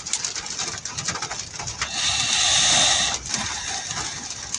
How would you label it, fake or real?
real